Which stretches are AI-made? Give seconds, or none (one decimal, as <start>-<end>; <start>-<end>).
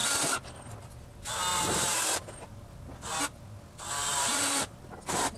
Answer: 1.5-2.2; 4.0-4.8